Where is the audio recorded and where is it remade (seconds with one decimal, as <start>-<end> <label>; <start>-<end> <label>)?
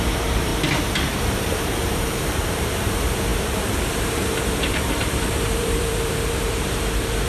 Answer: 0.0-0.5 remade; 0.5-1.2 recorded; 1.2-7.3 remade